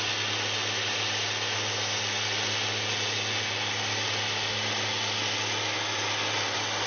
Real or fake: real